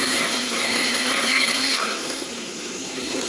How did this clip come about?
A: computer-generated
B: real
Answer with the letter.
A